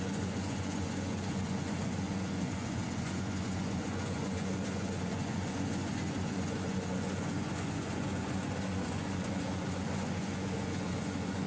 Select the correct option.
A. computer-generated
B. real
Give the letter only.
A